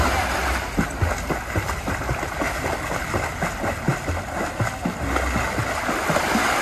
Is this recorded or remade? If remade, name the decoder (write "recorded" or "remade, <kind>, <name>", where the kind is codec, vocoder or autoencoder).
recorded